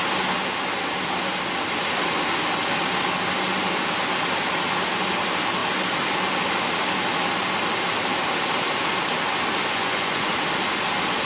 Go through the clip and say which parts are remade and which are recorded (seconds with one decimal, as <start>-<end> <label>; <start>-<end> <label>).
0.0-9.7 recorded; 9.7-10.3 remade; 10.3-11.3 recorded